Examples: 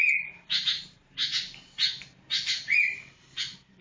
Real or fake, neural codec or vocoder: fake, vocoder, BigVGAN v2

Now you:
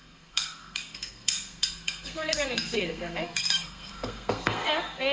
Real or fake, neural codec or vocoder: fake, codec, SNAC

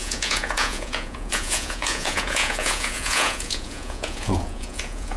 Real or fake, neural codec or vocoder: fake, vocoder, Vocos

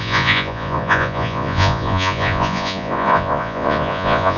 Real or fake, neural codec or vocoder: fake, vocoder, Vocos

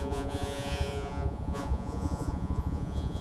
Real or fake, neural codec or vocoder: fake, vocoder, Vocos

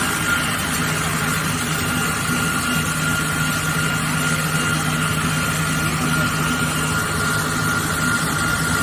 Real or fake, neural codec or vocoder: real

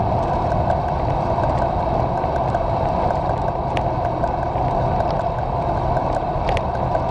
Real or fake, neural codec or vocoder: real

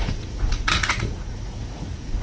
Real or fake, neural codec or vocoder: fake, vocoder, Vocos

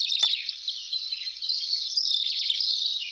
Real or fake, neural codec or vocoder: real